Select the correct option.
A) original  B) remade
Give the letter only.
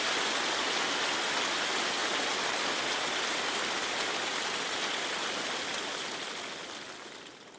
A